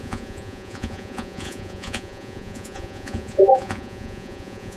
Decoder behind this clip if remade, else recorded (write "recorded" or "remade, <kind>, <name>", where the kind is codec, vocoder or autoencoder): remade, vocoder, Vocos